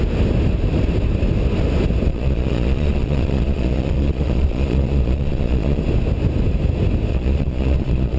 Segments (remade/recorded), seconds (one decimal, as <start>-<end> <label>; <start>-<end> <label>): 0.0-2.1 recorded; 2.1-5.8 remade; 5.8-7.1 recorded; 7.1-8.2 remade